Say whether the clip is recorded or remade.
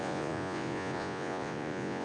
remade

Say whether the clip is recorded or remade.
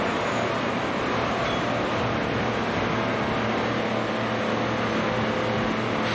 recorded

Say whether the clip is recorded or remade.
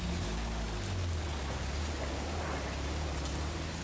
recorded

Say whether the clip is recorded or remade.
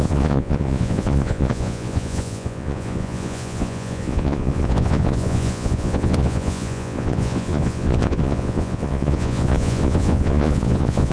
remade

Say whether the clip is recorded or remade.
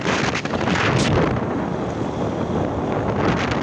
recorded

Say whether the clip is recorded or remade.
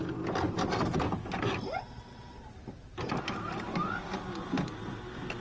recorded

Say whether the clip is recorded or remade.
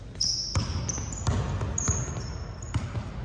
recorded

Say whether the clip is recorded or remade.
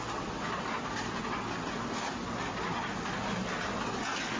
recorded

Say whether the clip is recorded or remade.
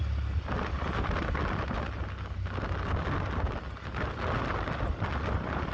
recorded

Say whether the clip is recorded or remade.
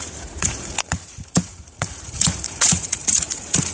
remade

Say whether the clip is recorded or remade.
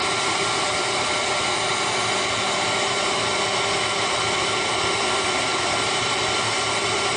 recorded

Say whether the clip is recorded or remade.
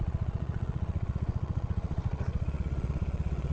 remade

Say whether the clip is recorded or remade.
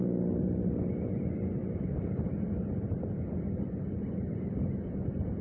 recorded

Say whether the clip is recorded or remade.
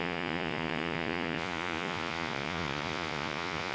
remade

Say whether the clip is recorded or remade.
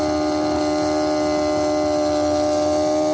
recorded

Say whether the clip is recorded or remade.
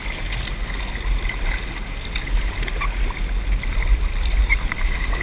recorded